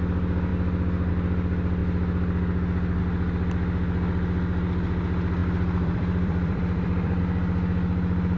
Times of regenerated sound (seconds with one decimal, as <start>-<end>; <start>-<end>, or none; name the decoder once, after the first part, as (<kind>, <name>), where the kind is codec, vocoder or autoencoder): 5.4-7.2 (vocoder, BigVGAN v2)